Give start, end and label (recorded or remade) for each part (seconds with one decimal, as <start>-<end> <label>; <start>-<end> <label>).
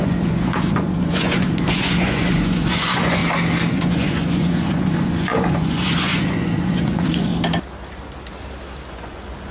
0.0-3.2 remade; 3.2-3.7 recorded; 3.7-7.3 remade; 7.3-8.9 recorded; 8.9-9.5 remade